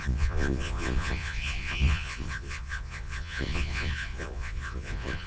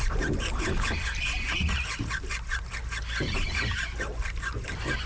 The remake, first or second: first